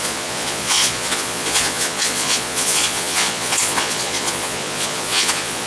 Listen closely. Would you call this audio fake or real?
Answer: fake